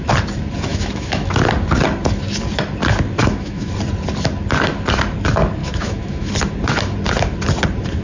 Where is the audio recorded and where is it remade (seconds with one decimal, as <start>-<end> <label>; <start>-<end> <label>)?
0.0-0.7 recorded; 0.7-1.3 remade; 1.3-3.2 recorded; 3.2-3.7 remade; 3.7-5.6 recorded; 5.6-6.3 remade; 6.3-8.0 recorded